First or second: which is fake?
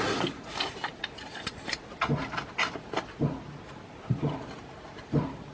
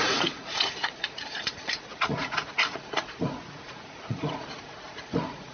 second